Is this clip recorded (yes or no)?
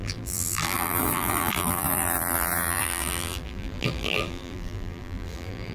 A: no